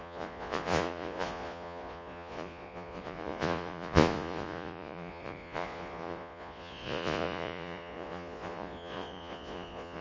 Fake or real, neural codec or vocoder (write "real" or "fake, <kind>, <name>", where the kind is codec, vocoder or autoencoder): fake, vocoder, Vocos